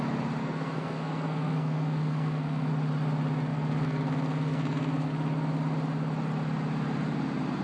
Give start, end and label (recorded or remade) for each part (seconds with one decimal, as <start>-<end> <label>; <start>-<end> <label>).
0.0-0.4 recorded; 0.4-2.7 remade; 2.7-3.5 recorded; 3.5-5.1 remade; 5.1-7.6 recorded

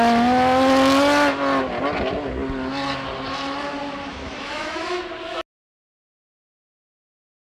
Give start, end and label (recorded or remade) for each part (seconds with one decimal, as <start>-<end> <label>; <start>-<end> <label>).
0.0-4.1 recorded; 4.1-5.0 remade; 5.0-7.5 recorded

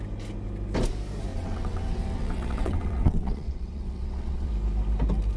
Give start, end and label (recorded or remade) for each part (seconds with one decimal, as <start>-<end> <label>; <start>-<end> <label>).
0.0-1.3 recorded; 1.3-4.5 remade; 4.5-5.4 recorded

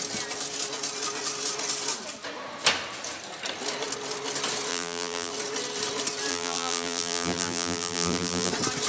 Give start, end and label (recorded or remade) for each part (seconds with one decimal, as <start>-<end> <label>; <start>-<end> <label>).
0.0-4.7 recorded; 4.7-5.3 remade; 5.3-6.3 recorded; 6.3-8.5 remade; 8.5-8.9 recorded